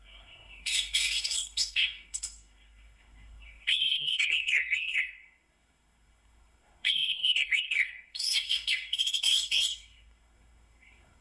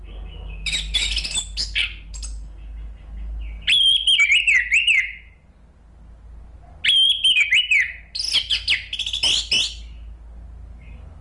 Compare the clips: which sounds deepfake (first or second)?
first